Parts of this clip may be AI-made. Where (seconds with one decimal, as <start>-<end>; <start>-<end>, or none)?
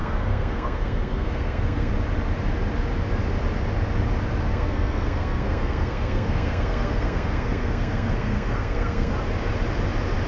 0.0-1.9; 4.5-9.1